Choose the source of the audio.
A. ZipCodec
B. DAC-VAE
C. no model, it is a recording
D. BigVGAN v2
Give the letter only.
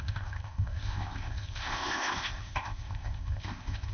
A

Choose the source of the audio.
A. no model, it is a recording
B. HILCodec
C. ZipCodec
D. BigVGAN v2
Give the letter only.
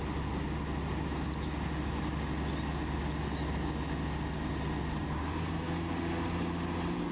A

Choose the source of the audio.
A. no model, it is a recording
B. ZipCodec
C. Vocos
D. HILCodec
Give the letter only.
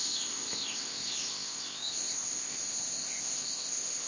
B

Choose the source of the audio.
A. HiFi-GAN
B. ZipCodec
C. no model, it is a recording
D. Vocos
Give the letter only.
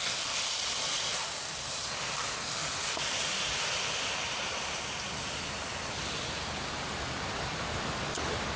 C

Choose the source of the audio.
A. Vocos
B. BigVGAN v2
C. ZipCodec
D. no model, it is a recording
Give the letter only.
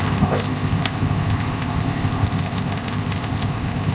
C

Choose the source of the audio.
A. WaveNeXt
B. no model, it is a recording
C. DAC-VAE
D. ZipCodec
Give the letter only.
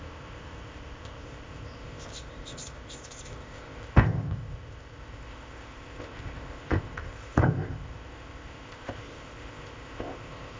D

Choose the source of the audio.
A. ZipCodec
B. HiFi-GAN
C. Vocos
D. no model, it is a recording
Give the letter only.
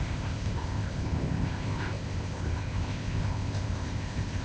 A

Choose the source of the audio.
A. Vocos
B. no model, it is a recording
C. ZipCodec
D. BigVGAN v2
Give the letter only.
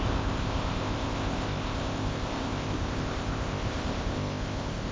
C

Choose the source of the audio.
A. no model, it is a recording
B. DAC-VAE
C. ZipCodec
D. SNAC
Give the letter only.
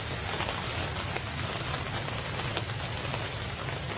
A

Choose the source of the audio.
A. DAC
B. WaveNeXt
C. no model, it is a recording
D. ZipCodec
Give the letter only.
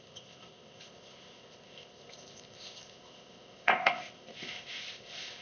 D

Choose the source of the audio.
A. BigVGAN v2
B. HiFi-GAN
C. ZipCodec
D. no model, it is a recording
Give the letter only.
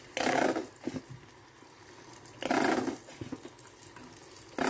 D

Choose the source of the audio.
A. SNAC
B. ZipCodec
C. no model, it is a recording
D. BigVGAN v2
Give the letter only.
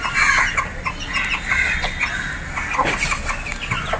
C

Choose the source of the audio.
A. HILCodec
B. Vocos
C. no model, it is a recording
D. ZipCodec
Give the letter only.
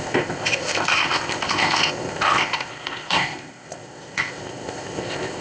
D